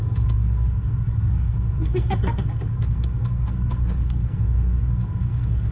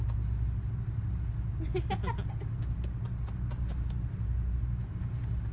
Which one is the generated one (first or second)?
first